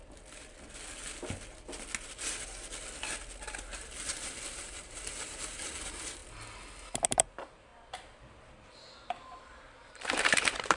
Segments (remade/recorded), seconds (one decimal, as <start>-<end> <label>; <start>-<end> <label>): 0.0-4.5 recorded; 4.5-6.2 remade; 6.2-7.1 recorded; 7.1-7.7 remade; 7.7-8.3 recorded; 8.3-10.8 remade